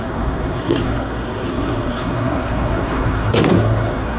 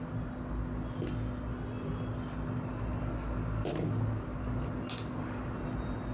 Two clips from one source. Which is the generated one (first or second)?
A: first